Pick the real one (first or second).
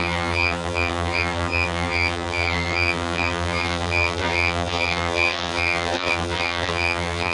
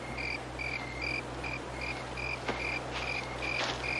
second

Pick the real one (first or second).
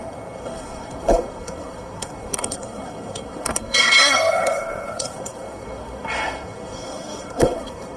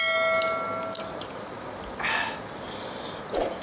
second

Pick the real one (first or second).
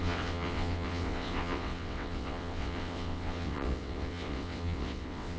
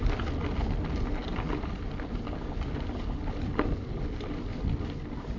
second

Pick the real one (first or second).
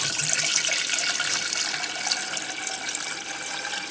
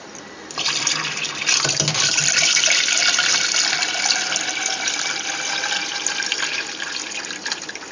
first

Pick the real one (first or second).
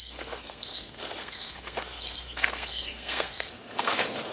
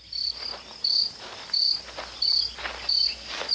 second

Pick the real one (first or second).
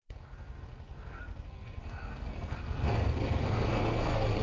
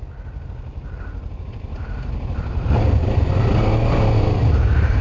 second